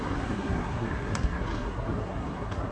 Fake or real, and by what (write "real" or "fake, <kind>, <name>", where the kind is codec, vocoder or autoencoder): fake, codec, SNAC